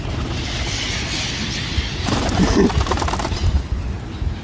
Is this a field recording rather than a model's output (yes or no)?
yes